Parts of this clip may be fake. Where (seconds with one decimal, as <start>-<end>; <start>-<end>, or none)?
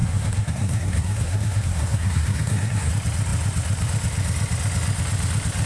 0.0-2.9